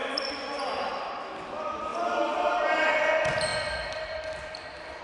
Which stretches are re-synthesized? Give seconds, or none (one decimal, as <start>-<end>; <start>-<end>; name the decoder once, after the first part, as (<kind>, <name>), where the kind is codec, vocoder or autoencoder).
0.0-1.1 (vocoder, BigVGAN v2); 1.9-2.5; 3.5-5.0